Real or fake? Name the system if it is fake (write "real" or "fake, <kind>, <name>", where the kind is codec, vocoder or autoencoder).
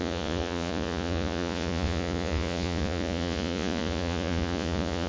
fake, vocoder, Vocos